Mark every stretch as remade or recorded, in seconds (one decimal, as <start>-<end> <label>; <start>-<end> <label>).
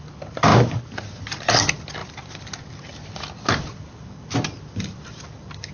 0.0-5.7 recorded